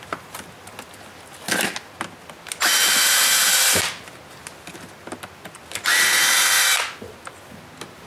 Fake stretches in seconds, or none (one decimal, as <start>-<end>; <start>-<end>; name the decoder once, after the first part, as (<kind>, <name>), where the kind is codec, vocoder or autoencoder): none